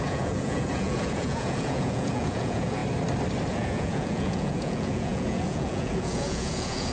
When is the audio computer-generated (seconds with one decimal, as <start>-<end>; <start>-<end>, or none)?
0.0-2.8; 3.5-6.9